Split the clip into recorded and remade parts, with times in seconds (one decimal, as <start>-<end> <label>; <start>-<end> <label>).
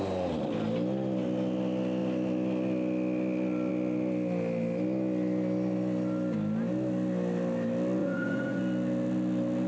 0.0-8.0 recorded; 8.0-8.6 remade; 8.6-9.7 recorded